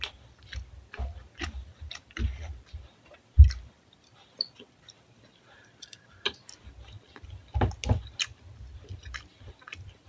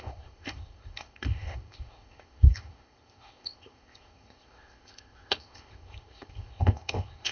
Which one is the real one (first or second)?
first